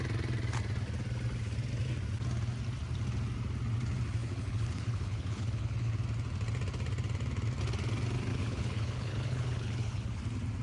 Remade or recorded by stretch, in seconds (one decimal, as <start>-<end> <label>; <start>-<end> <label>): 0.0-4.2 recorded; 4.2-5.9 remade; 5.9-8.3 recorded; 8.3-10.2 remade; 10.2-10.6 recorded